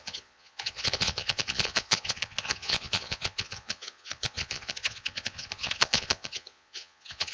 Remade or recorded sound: remade